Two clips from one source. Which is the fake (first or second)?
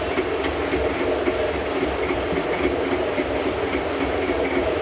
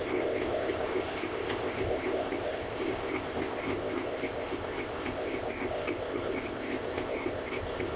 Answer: second